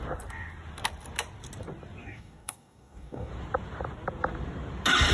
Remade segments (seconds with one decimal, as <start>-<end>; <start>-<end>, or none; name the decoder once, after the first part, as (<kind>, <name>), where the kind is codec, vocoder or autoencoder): 2.0-3.3 (codec, DAC)